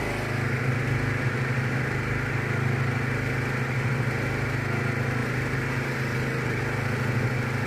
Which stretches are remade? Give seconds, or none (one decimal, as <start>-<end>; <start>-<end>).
5.2-6.6